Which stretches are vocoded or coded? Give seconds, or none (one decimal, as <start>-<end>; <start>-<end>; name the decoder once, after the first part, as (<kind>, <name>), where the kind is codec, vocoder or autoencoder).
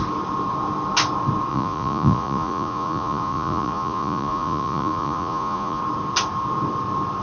1.5-5.8 (vocoder, Vocos)